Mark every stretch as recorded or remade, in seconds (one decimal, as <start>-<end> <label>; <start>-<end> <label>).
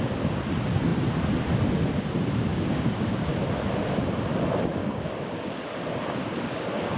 0.0-2.5 recorded; 2.5-3.3 remade; 3.3-4.8 recorded; 4.8-5.6 remade; 5.6-6.3 recorded; 6.3-7.0 remade